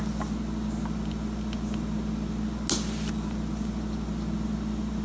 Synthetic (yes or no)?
no